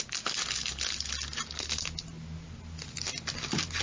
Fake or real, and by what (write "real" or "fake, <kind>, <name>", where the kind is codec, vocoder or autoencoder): real